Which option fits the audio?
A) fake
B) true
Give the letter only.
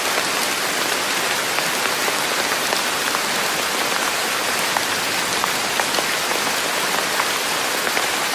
B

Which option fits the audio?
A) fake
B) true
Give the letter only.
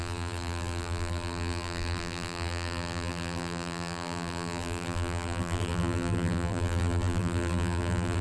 A